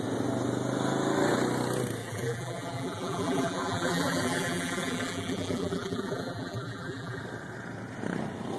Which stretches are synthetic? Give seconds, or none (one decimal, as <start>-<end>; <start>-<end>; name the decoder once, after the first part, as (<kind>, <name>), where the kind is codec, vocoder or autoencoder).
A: 2.0-7.2 (vocoder, BigVGAN v2)